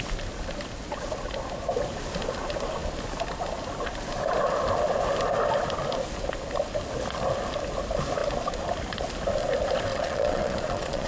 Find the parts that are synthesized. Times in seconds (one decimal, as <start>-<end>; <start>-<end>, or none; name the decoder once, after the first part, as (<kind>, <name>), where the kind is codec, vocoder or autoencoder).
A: 9.9-11.1 (vocoder, Vocos)